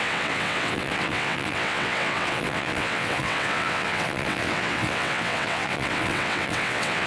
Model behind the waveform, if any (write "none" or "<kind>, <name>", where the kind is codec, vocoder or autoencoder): vocoder, WaveNeXt